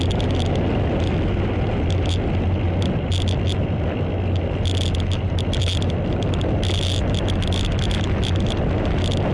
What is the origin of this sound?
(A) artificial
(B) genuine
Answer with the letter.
B